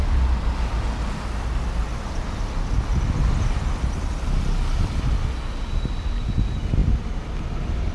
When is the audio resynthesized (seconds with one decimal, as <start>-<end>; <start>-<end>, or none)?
none